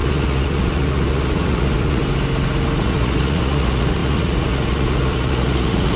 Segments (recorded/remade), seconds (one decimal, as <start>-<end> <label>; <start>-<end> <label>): 0.0-2.0 remade; 2.0-2.8 recorded; 2.8-6.0 remade